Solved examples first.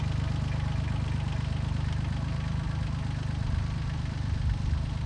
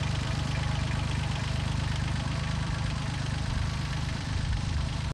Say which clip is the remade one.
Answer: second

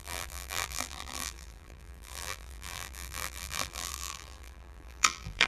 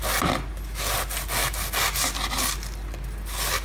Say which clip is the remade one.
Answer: first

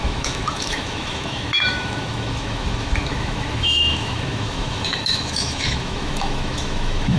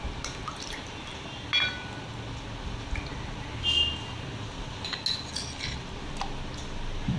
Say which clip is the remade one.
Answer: first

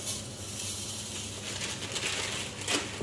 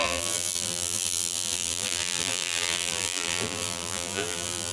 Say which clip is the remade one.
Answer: second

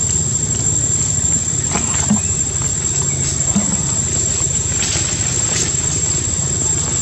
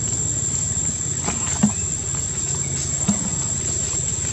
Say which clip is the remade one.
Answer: first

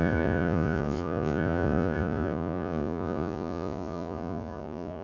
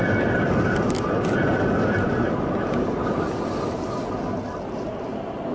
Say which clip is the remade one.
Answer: first